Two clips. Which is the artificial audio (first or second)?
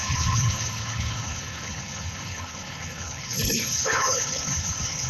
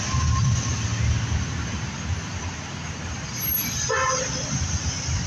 first